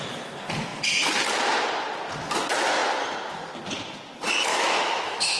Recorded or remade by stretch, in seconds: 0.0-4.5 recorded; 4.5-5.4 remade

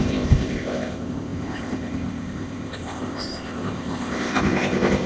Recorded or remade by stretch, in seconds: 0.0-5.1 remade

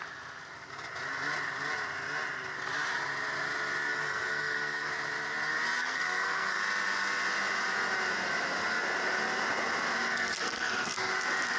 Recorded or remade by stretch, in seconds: 0.0-3.9 recorded; 3.9-4.9 remade; 4.9-5.8 recorded; 5.8-6.6 remade; 6.6-10.0 recorded; 10.0-11.1 remade; 11.1-11.6 recorded